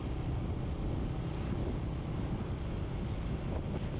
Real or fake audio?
real